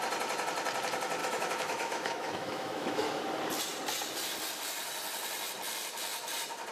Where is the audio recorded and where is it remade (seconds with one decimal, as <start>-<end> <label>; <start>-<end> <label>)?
0.0-1.2 recorded; 1.2-3.2 remade; 3.2-6.7 recorded